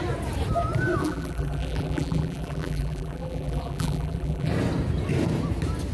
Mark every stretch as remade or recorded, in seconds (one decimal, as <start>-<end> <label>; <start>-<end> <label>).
0.0-1.0 recorded; 1.0-4.5 remade; 4.5-5.9 recorded